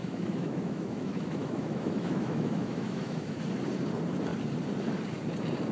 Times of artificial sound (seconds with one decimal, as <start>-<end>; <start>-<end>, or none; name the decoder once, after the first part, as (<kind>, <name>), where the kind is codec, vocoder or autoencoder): 0.0-3.4 (autoencoder, DAC-VAE)